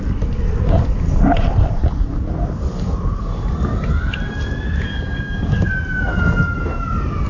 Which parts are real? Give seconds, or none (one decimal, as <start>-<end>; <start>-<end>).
0.0-4.9; 5.7-7.3